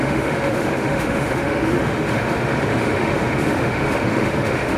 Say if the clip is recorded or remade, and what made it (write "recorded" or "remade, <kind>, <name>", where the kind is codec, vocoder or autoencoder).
remade, autoencoder, DAC-VAE